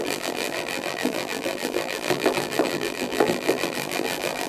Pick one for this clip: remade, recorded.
remade